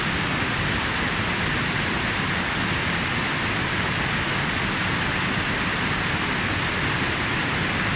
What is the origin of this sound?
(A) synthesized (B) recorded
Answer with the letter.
B